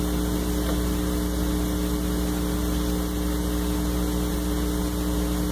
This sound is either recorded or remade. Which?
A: recorded